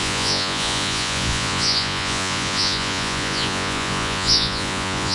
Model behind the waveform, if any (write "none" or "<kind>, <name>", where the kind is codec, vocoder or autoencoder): vocoder, Vocos